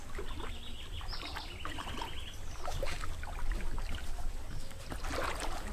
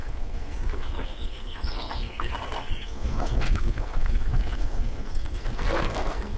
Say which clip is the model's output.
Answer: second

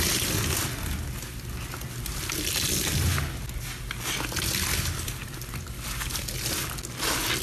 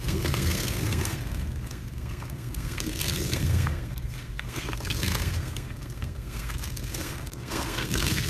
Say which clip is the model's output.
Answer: second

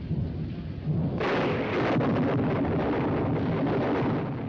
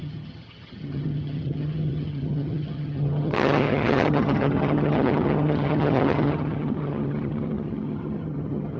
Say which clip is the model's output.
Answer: second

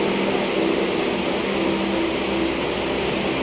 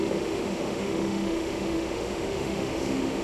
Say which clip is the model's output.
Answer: second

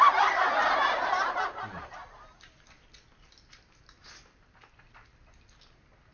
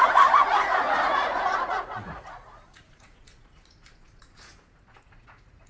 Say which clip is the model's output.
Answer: second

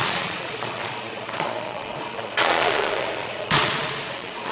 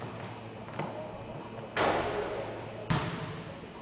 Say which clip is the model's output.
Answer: first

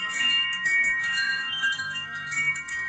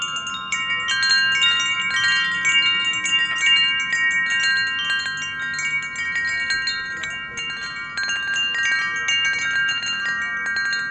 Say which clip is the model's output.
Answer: first